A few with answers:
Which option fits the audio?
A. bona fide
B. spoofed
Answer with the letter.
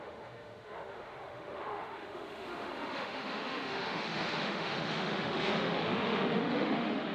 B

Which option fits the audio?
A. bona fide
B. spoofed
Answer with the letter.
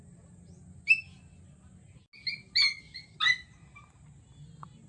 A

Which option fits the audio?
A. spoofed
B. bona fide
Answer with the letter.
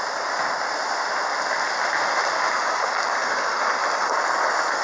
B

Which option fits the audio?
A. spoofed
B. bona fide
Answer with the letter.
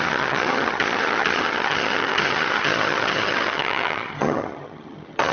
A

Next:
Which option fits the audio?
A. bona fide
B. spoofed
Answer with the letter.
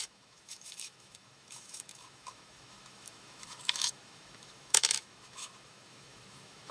B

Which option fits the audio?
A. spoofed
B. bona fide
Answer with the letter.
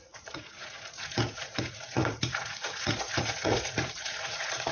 A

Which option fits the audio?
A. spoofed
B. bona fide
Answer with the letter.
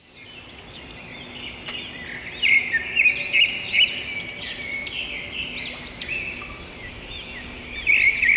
B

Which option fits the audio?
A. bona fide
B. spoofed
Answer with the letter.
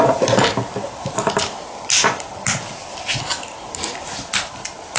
A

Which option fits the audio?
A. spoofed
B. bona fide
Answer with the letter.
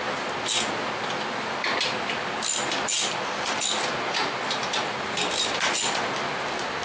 B